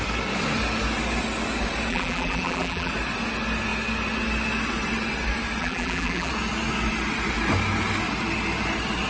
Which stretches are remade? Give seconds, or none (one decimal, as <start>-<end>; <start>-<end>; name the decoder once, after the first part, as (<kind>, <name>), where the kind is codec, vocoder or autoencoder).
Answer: 1.9-2.9 (vocoder, BigVGAN v2); 5.6-6.3